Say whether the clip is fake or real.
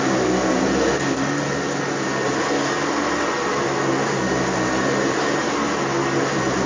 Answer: real